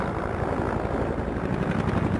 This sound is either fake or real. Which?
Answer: real